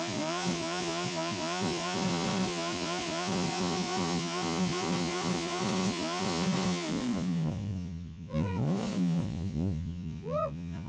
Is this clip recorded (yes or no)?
no